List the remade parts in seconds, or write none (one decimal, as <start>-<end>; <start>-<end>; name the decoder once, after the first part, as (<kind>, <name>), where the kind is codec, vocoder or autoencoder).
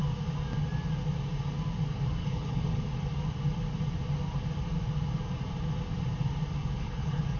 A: 2.2-2.8 (codec, HILCodec); 6.6-7.4